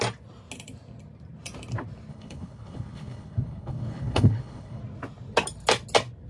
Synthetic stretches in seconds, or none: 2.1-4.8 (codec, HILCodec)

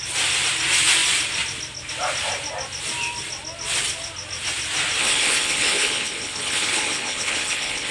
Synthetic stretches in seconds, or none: 5.0-7.9 (codec, HILCodec)